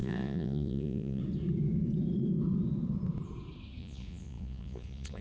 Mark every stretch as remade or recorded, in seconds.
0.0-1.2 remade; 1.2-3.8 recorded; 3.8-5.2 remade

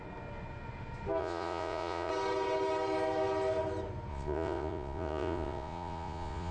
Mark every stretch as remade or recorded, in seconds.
0.0-1.2 recorded; 1.2-2.1 remade; 2.1-4.1 recorded; 4.1-6.5 remade